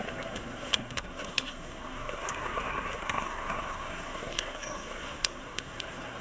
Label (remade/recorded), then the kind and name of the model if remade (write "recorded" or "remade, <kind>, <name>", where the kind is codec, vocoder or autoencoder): remade, codec, SNAC